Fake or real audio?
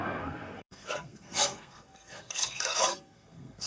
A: fake